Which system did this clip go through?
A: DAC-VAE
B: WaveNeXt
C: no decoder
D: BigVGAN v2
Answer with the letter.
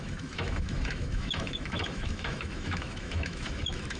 A